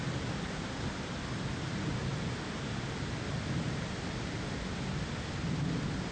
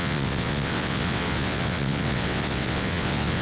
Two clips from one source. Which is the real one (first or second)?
first